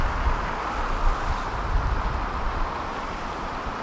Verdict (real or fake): fake